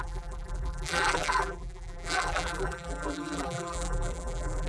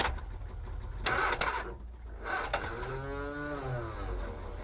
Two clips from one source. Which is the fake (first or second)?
first